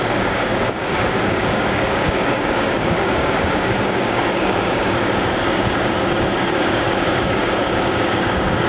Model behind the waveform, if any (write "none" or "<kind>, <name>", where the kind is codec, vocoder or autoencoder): codec, DAC